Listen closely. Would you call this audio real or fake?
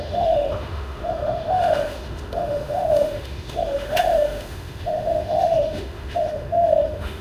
fake